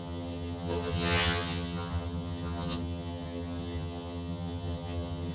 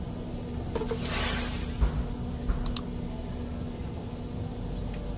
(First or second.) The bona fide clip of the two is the second